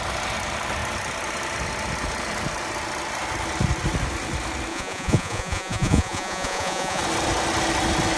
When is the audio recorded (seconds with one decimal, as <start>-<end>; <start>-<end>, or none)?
0.0-4.7; 7.0-8.2